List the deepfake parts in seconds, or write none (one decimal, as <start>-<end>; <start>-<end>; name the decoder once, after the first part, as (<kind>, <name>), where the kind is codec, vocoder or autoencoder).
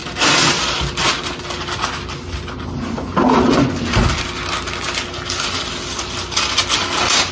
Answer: none